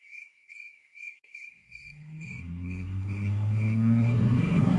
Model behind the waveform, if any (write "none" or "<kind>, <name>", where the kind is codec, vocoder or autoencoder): codec, SNAC